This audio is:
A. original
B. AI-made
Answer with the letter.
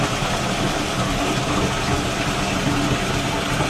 A